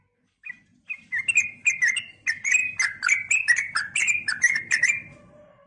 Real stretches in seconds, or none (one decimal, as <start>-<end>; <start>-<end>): 0.0-5.7